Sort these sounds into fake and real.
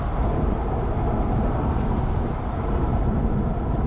fake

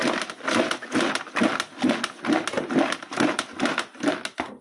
real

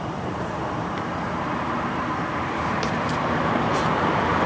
fake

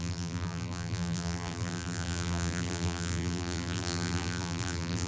fake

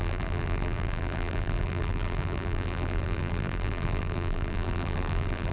fake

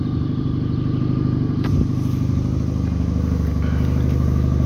real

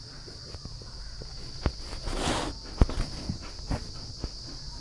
real